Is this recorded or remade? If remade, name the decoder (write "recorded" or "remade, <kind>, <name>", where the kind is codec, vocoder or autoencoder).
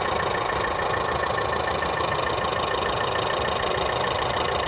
recorded